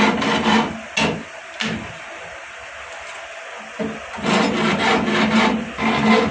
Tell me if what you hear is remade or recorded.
recorded